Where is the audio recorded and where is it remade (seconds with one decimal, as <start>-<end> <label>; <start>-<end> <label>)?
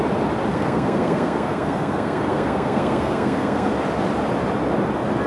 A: 0.0-0.5 recorded; 0.5-3.7 remade; 3.7-5.3 recorded